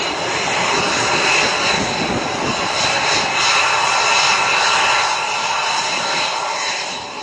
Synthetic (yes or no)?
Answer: no